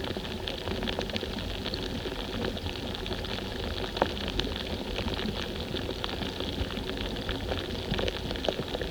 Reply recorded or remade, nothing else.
recorded